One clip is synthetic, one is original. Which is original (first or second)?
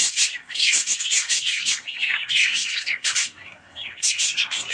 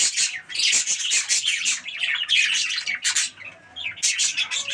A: second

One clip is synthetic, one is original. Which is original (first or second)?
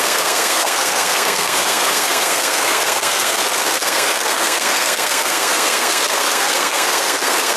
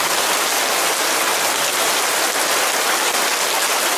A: second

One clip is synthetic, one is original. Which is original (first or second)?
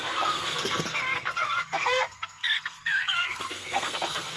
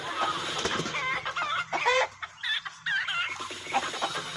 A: second